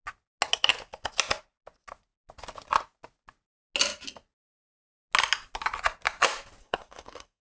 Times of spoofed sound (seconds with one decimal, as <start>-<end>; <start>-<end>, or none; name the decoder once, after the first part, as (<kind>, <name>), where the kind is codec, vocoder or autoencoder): 6.6-7.5 (codec, SNAC)